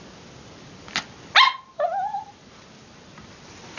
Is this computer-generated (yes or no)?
no